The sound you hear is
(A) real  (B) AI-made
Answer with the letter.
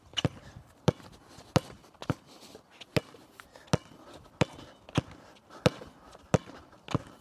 A